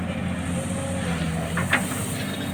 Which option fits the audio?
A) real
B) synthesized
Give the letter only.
A